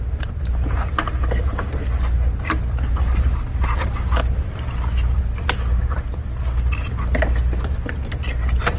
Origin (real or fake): real